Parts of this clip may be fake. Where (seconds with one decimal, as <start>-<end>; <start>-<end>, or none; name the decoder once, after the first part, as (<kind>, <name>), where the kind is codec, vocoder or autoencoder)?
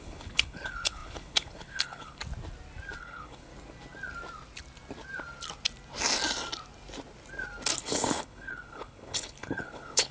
0.0-2.2 (codec, HILCodec); 3.0-3.5; 7.8-10.1